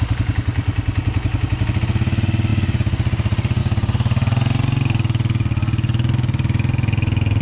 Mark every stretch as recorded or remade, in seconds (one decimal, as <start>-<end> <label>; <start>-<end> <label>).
0.0-7.4 recorded